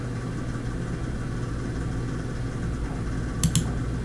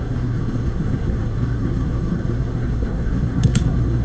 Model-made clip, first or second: second